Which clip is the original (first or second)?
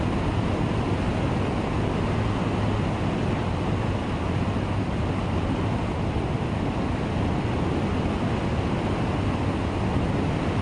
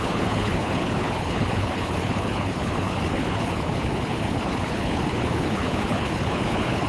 first